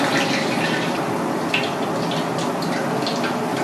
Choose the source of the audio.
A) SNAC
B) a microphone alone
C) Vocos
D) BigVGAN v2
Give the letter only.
B